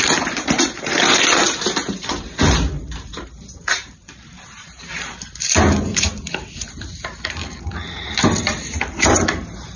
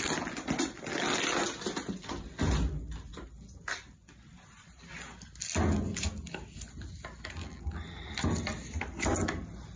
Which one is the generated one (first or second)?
first